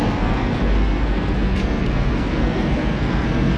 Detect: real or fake fake